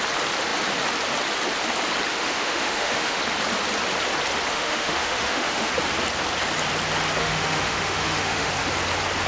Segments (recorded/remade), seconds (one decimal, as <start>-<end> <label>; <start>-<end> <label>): 0.0-2.1 recorded; 2.1-3.2 remade; 3.2-4.5 recorded; 4.5-5.7 remade; 5.7-7.2 recorded; 7.2-8.5 remade; 8.5-9.3 recorded